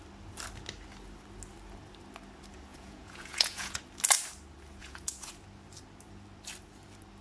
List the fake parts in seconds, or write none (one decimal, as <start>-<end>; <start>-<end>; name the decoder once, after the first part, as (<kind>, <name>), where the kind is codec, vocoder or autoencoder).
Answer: 2.7-3.8 (vocoder, Vocos); 4.8-5.3